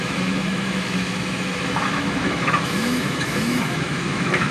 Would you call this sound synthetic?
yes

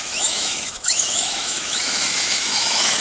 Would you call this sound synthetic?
yes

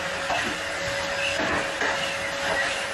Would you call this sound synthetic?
no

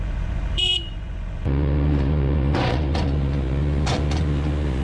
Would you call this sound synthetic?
yes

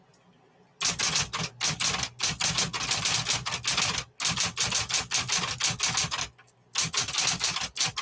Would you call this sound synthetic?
no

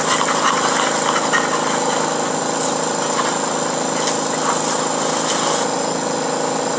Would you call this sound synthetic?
no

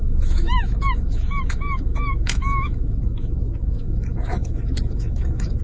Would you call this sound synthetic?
yes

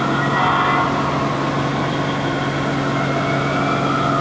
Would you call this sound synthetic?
no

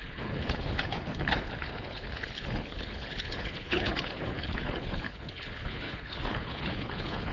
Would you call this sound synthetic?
yes